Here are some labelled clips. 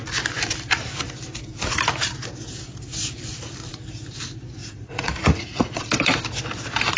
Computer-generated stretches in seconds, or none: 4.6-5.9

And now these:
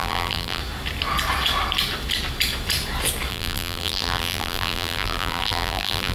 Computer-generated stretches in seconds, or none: 0.0-0.6; 3.3-6.1

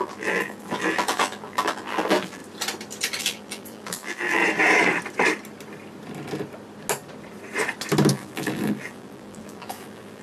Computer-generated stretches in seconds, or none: 0.0-2.4; 3.2-4.4; 8.1-10.2

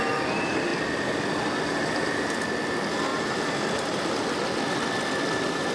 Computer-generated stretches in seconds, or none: none

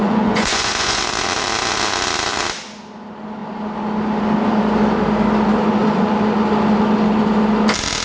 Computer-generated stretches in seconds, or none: 0.0-1.0

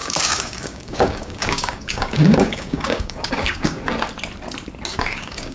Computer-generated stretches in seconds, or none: 0.0-3.8; 4.9-5.5

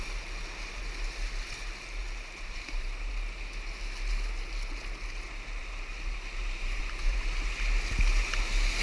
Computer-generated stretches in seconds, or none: 2.0-3.1; 5.6-6.8